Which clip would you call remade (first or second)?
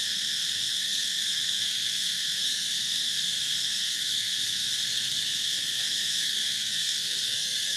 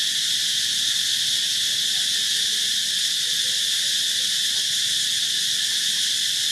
first